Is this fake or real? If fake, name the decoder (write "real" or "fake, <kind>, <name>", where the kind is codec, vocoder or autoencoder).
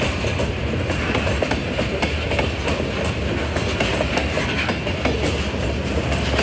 real